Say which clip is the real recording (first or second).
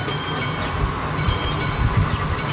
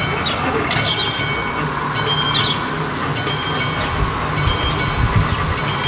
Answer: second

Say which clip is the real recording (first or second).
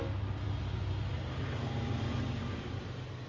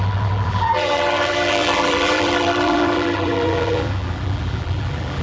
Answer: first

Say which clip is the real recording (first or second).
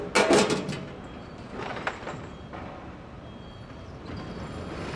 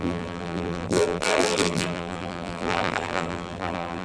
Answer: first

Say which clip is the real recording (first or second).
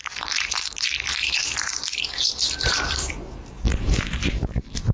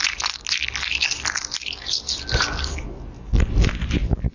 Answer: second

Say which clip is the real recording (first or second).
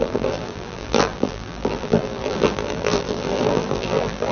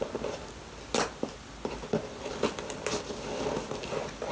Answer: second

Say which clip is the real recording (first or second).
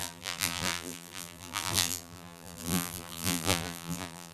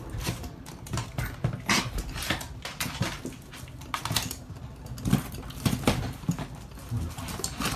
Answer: second